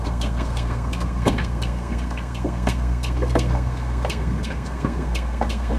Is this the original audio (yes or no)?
no